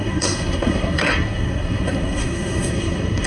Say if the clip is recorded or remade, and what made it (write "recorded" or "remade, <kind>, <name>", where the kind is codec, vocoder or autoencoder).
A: remade, codec, SNAC